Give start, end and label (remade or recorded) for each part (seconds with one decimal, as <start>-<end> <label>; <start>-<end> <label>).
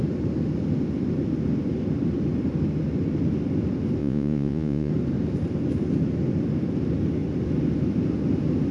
0.0-4.0 recorded; 4.0-4.9 remade; 4.9-8.7 recorded